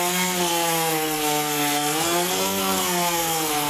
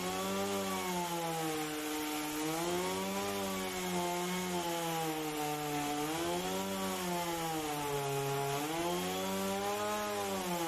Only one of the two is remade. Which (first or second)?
first